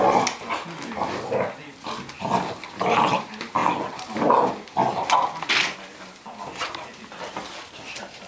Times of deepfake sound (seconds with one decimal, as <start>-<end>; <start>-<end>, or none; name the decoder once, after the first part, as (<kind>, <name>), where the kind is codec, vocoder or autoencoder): 2.7-3.6 (vocoder, BigVGAN v2); 7.8-8.3